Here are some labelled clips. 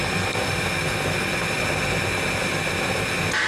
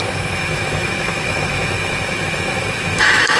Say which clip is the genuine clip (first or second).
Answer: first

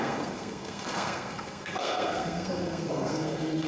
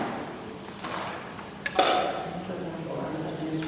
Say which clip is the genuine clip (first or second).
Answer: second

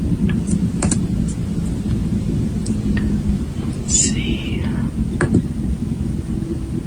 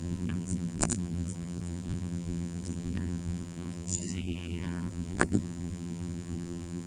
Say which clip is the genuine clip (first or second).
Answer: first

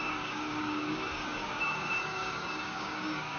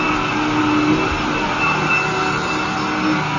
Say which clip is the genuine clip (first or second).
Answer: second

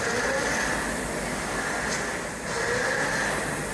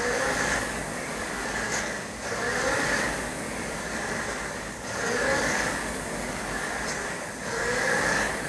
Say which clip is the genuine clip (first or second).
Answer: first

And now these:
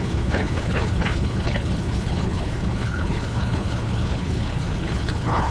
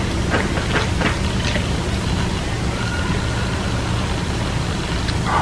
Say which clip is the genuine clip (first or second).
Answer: second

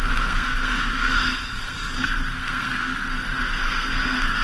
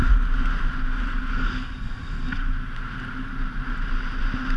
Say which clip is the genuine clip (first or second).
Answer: second